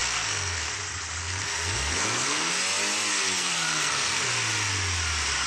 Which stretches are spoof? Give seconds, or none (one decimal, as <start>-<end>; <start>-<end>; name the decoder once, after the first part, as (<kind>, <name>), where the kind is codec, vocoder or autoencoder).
0.0-0.7 (codec, SNAC); 1.2-2.5; 3.1-4.3